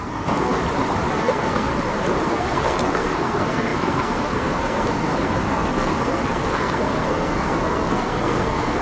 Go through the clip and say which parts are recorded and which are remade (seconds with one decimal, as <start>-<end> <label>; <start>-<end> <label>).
0.0-0.6 remade; 0.6-1.1 recorded; 1.1-1.7 remade; 1.7-2.2 recorded; 2.2-8.8 remade